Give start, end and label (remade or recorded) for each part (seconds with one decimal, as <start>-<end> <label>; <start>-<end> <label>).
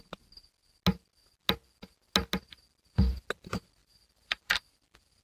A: 0.0-3.8 recorded; 3.8-5.2 remade